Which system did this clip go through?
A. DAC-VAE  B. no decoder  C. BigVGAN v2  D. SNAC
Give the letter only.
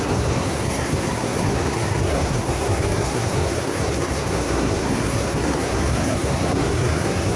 D